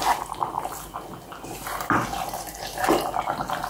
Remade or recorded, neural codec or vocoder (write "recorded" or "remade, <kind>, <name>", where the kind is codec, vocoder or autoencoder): recorded